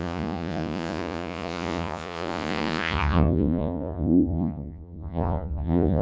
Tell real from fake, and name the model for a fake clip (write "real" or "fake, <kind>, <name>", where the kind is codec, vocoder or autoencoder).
fake, vocoder, Vocos